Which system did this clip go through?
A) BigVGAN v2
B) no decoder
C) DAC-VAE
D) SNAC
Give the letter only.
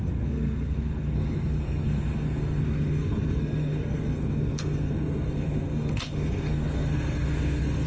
D